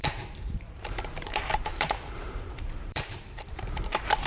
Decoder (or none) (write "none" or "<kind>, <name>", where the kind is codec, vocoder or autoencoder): vocoder, BigVGAN v2